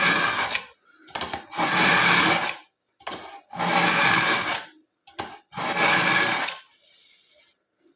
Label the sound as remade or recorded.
recorded